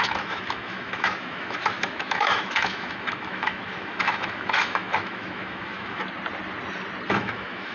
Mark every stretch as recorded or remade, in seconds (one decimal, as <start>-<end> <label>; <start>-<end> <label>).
0.0-6.0 remade; 6.0-7.1 recorded; 7.1-7.7 remade